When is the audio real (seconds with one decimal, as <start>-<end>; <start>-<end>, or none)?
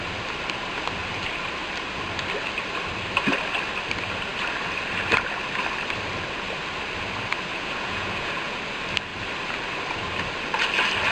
0.0-7.5; 8.6-11.1